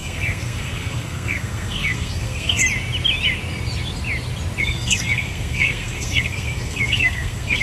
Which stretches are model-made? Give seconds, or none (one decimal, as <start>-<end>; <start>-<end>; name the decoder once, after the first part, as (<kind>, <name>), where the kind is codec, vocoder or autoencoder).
0.0-2.6 (codec, SNAC); 4.6-7.6